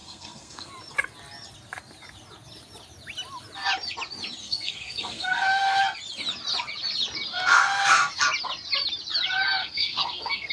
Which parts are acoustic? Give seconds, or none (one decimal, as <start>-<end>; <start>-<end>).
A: 0.7-4.4; 5.8-7.3; 8.2-9.6